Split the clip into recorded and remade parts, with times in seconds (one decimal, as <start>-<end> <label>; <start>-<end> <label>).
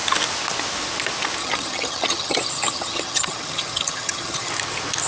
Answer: 0.0-1.4 recorded; 1.4-4.5 remade; 4.5-5.1 recorded